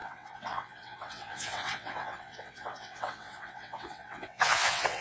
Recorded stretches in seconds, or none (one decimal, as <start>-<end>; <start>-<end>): none